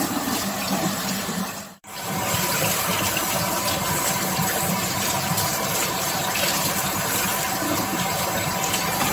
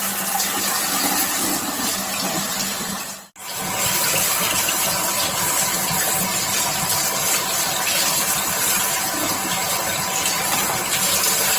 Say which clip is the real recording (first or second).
second